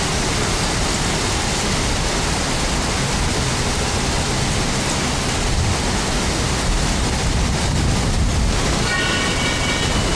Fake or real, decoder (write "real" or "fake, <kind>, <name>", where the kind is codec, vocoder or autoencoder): real